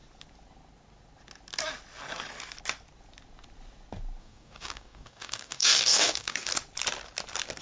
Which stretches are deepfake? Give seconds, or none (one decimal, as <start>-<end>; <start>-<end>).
4.2-6.5